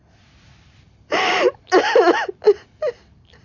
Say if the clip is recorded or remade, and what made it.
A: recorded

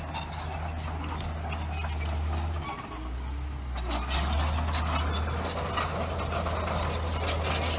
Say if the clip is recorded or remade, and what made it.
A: recorded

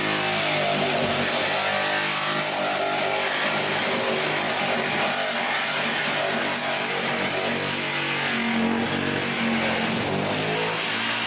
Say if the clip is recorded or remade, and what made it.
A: recorded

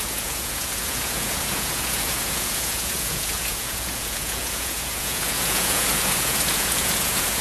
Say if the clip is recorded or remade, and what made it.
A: remade, vocoder, Vocos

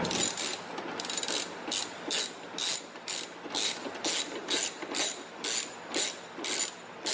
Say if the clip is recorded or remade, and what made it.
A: recorded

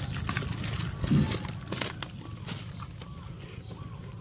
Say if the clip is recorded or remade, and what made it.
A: recorded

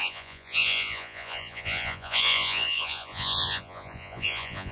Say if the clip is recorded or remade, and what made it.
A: remade, vocoder, Vocos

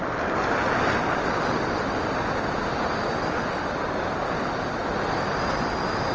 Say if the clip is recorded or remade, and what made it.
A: recorded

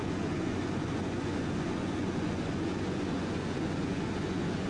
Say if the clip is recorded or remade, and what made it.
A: remade, vocoder, Vocos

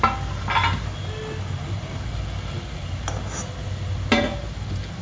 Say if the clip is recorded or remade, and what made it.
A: recorded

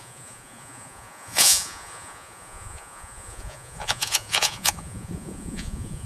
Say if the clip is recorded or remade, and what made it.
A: remade, vocoder, Vocos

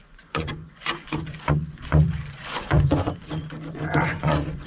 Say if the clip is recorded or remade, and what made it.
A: remade, vocoder, Vocos